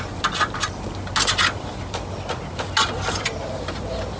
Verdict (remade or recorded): recorded